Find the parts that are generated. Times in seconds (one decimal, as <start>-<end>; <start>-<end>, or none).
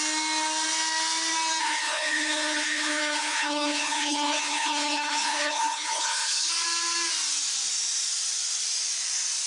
1.6-6.5